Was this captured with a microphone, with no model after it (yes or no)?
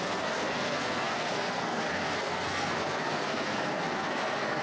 no